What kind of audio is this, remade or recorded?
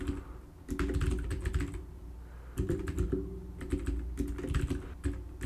recorded